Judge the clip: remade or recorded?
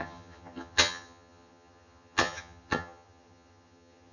remade